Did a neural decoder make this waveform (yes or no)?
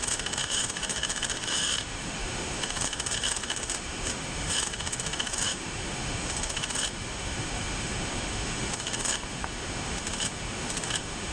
yes